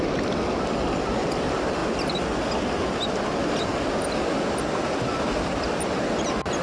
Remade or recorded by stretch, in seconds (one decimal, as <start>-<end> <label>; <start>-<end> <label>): 0.0-6.6 recorded